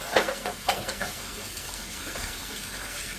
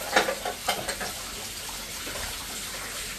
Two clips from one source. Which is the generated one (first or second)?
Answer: first